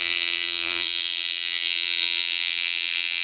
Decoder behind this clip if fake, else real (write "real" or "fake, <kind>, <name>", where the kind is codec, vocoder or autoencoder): fake, vocoder, BigVGAN v2